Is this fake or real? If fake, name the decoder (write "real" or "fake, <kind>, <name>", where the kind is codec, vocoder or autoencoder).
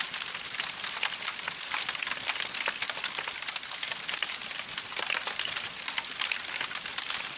real